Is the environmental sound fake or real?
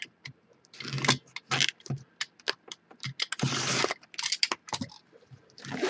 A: real